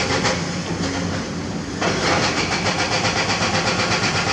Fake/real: real